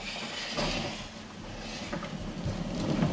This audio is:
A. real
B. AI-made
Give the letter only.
A